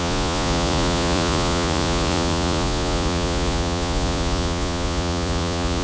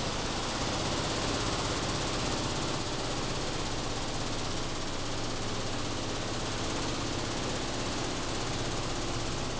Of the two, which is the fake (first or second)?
first